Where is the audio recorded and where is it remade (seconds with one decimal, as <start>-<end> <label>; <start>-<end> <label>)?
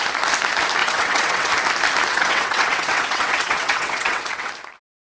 0.0-0.8 recorded; 0.8-1.5 remade; 1.5-2.1 recorded; 2.1-4.5 remade; 4.5-5.1 recorded